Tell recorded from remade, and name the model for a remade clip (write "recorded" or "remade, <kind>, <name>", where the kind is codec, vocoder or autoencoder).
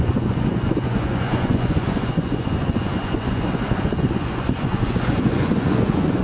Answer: remade, vocoder, Vocos